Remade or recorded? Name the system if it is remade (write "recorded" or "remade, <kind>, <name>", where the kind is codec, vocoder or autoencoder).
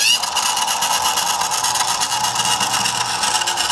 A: recorded